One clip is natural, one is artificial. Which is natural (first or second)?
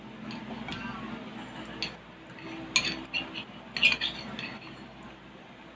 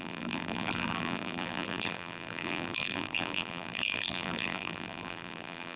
first